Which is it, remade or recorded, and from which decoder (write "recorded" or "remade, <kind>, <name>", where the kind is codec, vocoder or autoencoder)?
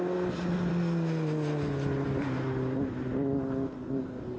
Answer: recorded